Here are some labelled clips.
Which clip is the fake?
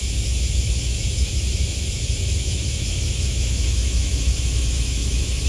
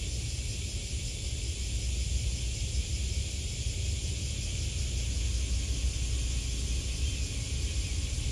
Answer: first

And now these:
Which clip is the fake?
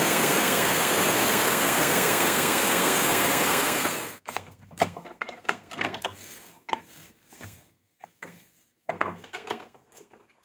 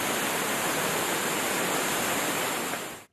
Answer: first